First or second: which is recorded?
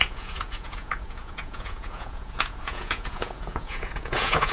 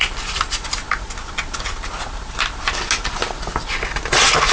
second